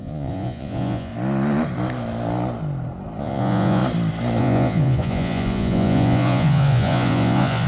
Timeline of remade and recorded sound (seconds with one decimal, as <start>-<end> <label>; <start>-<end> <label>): 0.0-1.1 remade; 1.1-3.2 recorded; 3.2-3.8 remade; 3.8-4.4 recorded; 4.4-7.7 remade

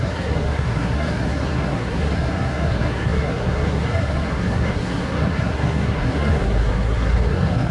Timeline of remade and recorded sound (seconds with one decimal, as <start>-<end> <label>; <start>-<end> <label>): 0.0-7.7 remade

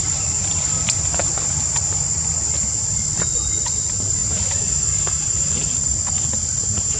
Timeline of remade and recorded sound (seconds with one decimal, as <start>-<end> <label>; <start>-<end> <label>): 0.0-7.0 remade

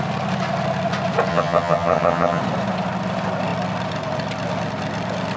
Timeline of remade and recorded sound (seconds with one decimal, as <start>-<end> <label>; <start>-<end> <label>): 0.0-1.3 recorded; 1.3-2.4 remade; 2.4-5.4 recorded

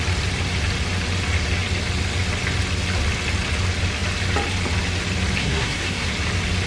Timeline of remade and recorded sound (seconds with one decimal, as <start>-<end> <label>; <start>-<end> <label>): 0.0-5.4 recorded; 5.4-6.1 remade; 6.1-6.7 recorded